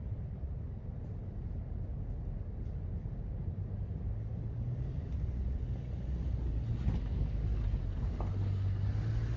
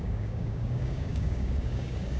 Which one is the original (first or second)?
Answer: first